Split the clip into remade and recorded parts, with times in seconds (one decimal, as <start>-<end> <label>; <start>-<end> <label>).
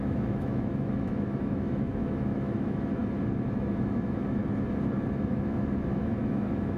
0.0-3.0 remade; 3.0-3.7 recorded; 3.7-4.4 remade; 4.4-5.1 recorded; 5.1-6.8 remade